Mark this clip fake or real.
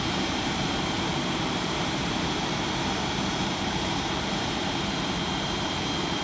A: fake